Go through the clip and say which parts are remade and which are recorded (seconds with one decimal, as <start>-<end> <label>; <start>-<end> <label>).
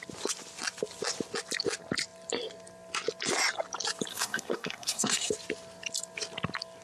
0.0-4.1 recorded; 4.1-5.3 remade; 5.3-6.8 recorded